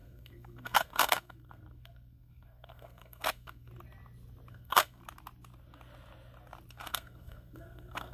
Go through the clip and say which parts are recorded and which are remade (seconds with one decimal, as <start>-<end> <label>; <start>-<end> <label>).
0.0-3.7 remade; 3.7-4.5 recorded; 4.5-5.0 remade; 5.0-6.7 recorded; 6.7-8.1 remade